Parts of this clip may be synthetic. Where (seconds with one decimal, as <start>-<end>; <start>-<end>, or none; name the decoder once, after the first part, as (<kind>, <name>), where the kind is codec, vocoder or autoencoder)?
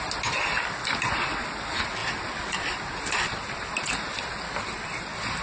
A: none